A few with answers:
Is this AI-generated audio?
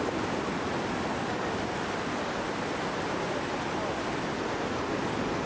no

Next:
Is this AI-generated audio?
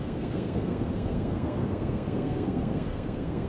yes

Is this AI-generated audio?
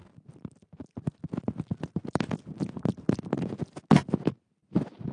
no